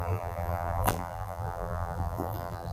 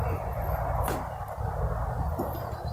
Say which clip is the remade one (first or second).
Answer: first